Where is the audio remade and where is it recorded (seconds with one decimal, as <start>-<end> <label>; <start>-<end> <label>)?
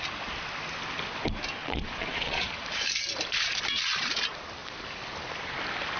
0.0-1.6 recorded; 1.6-2.5 remade; 2.5-6.0 recorded